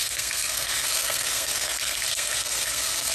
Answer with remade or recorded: remade